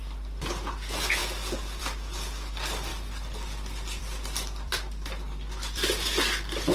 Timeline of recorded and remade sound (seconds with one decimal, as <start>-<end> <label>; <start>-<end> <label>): 0.0-1.2 remade; 1.2-1.8 recorded; 1.8-6.7 remade